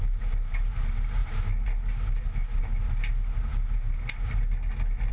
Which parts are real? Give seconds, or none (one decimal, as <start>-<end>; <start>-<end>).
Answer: 0.0-5.1